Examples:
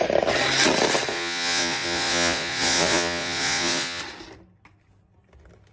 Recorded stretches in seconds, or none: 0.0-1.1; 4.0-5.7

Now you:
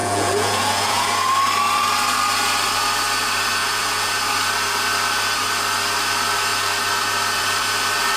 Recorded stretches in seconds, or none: 1.3-3.6; 4.2-8.2

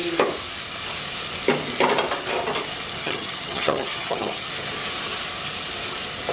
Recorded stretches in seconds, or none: 0.0-3.0; 4.5-6.3

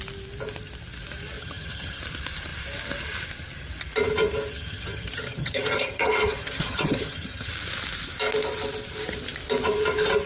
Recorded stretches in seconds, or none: 0.0-1.4; 2.0-4.5; 7.5-10.3

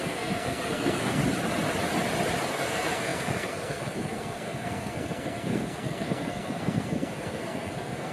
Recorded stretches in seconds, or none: 1.2-2.5